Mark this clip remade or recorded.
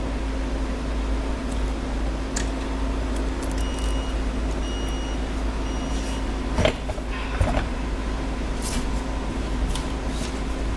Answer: recorded